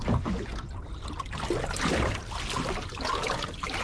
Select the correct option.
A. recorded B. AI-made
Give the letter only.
A